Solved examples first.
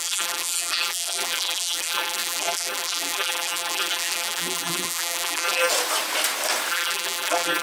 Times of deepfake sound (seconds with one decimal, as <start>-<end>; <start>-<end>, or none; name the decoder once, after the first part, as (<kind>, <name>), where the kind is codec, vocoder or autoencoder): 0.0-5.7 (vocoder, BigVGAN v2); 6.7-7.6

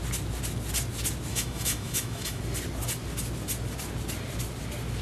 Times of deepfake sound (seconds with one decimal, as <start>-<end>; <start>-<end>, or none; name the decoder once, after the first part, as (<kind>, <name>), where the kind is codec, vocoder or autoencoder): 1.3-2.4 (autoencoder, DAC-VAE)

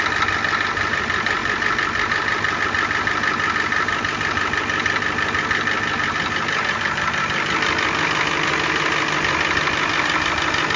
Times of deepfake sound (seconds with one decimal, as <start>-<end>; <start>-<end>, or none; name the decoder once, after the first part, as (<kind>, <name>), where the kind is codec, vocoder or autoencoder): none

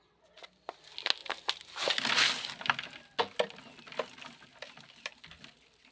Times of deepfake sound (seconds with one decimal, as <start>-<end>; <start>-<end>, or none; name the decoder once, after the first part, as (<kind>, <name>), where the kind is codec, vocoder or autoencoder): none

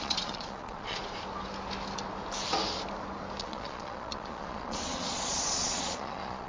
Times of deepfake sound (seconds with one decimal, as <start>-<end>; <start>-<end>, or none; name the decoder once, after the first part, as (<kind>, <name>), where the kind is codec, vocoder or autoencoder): 0.0-1.0 (vocoder, Vocos); 3.4-6.5

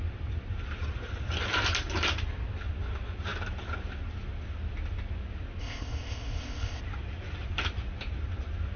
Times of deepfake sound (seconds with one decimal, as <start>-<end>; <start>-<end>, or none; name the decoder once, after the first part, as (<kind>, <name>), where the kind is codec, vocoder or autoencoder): 5.6-6.8 (codec, ZipCodec)

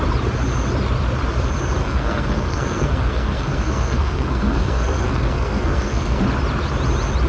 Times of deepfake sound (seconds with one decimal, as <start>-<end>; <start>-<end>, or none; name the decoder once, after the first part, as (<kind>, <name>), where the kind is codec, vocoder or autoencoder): 1.8-6.2 (codec, SNAC)